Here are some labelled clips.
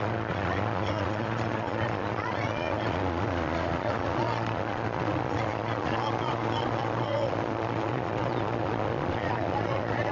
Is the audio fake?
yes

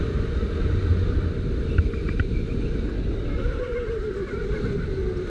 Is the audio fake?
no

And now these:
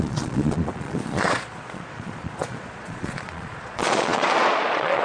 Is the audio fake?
yes